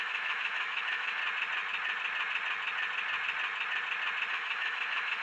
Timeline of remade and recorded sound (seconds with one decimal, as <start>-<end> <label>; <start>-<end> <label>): 0.0-1.2 remade; 1.2-4.3 recorded; 4.3-5.2 remade

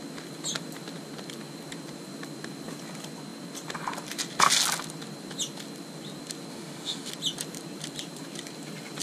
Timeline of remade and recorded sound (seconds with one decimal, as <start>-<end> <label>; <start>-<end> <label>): 0.0-6.5 recorded; 6.5-7.1 remade; 7.1-9.0 recorded